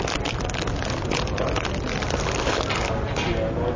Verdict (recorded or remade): recorded